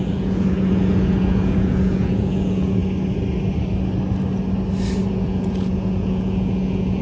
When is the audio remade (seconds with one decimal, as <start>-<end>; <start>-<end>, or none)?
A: 0.0-2.8; 5.1-7.0